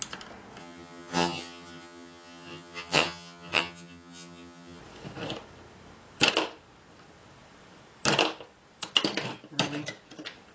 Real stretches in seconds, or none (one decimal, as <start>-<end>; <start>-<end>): 0.0-0.6; 4.8-10.5